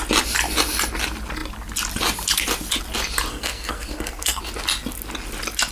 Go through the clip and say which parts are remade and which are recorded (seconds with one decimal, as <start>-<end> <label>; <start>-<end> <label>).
0.0-3.3 recorded; 3.3-4.4 remade; 4.4-5.7 recorded